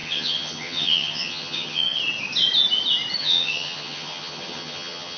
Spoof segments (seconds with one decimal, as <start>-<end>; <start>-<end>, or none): 0.0-2.0; 3.2-5.2